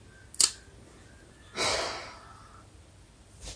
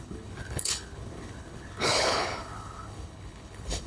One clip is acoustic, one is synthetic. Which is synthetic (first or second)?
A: second